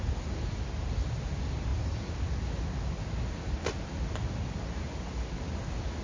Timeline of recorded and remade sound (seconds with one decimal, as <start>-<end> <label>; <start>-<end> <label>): 0.0-6.0 recorded